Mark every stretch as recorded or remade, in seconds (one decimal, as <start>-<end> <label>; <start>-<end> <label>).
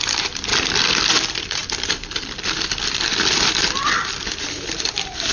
0.0-0.5 remade; 0.5-1.1 recorded; 1.1-5.3 remade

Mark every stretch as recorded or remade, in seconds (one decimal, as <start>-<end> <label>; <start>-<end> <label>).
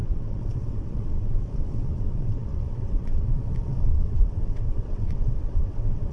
0.0-6.1 remade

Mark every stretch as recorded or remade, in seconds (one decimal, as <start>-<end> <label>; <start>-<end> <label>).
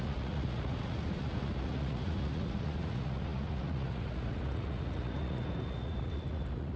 0.0-6.8 remade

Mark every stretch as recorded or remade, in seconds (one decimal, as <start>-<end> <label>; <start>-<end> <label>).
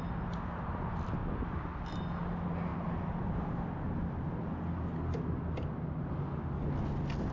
0.0-2.7 recorded; 2.7-3.2 remade; 3.2-7.3 recorded